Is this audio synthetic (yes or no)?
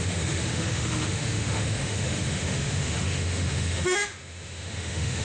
yes